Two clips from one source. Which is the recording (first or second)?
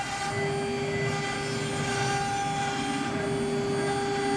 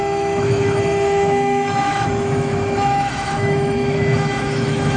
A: first